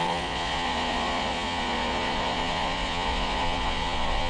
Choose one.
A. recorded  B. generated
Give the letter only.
B